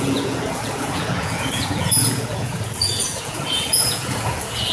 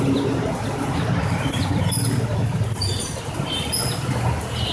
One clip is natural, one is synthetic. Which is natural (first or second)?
second